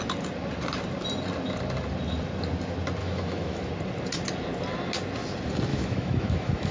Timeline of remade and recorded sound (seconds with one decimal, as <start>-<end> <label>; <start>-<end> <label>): 0.0-3.0 recorded; 3.0-3.7 remade; 3.7-5.7 recorded; 5.7-6.7 remade